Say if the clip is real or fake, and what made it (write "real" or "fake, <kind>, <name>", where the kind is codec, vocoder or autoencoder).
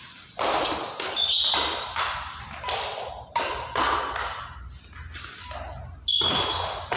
real